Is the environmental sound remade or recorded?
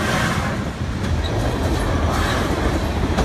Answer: recorded